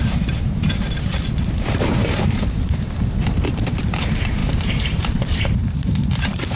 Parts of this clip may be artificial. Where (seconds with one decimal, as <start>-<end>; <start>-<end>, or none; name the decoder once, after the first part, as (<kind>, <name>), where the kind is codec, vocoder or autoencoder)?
0.0-6.6 (vocoder, BigVGAN v2)